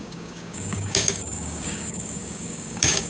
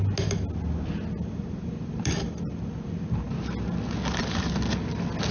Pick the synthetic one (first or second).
first